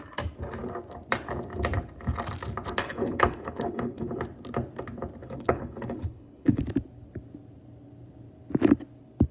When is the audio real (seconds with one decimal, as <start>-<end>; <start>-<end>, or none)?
0.0-2.8; 4.2-5.2; 6.6-9.3